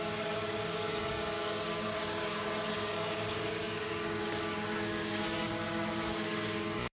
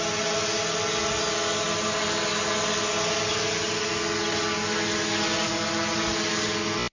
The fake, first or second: first